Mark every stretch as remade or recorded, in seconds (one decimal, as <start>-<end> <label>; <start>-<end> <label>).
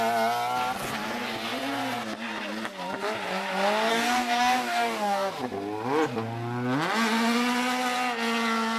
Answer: 0.0-3.9 recorded; 3.9-5.3 remade; 5.3-8.8 recorded